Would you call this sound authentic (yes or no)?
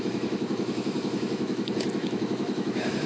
no